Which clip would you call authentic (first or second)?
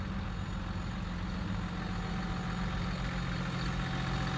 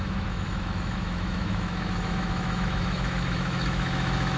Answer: first